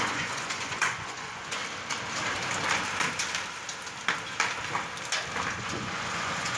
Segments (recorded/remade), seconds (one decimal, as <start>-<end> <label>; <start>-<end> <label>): 0.0-1.6 remade; 1.6-5.6 recorded; 5.6-6.6 remade